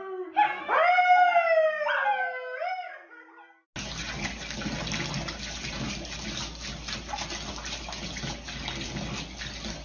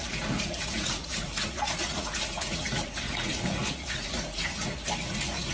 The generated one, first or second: second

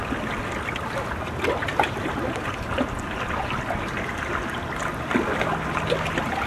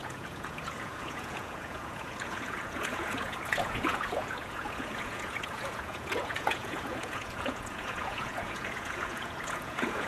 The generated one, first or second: second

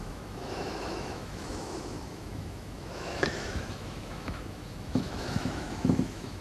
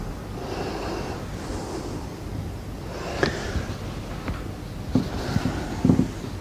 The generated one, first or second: first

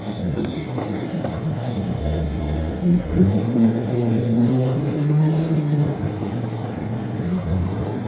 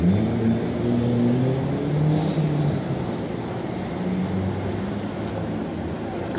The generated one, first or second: first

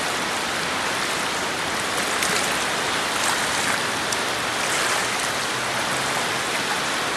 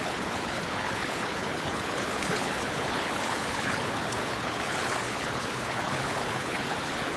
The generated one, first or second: second